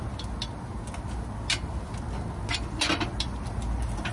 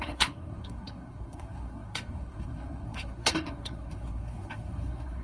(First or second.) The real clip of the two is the first